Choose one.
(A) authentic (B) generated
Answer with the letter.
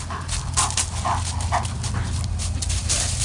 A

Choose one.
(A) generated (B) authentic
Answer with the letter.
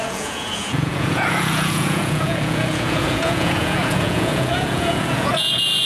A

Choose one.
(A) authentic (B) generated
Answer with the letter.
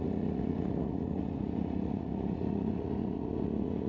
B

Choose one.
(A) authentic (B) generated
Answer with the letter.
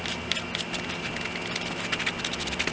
A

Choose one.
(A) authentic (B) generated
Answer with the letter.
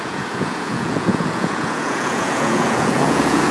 B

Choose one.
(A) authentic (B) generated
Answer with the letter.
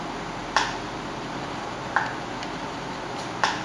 A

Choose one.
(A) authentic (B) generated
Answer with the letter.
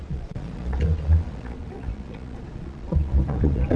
B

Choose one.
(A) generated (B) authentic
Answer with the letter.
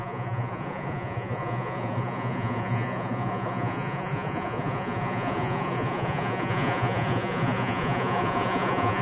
A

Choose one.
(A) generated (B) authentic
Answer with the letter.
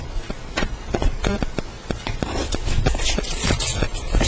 A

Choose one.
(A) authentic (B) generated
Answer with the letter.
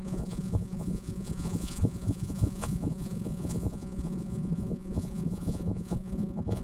B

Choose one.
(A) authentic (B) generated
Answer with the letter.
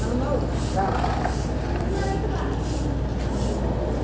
A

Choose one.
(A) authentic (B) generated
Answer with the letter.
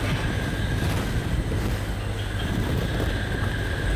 A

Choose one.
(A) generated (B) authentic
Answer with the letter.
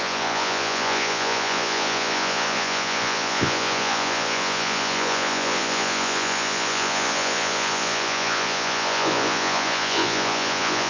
A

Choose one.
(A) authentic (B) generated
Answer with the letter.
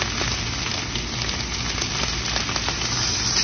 A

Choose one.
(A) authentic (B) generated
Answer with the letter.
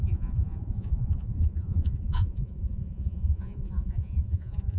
B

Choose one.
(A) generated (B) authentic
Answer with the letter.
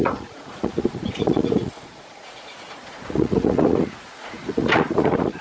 A